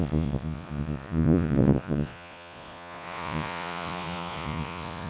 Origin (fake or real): fake